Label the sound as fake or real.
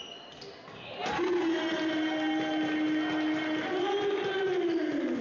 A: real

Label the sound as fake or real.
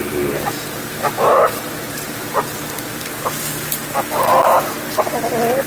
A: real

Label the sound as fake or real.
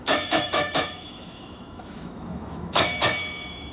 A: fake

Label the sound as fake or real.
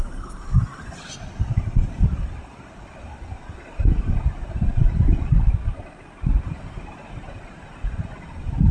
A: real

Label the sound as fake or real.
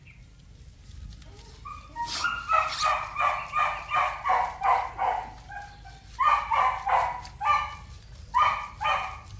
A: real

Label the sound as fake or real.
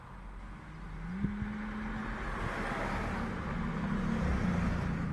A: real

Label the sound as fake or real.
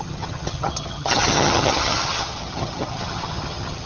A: fake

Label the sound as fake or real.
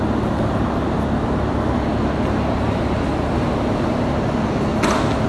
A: real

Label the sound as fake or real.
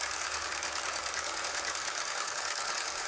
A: fake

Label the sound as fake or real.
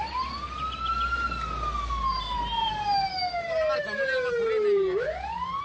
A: real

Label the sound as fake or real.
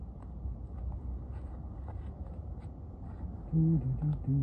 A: real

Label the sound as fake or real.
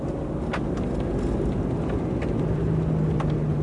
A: real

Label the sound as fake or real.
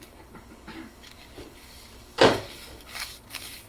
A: fake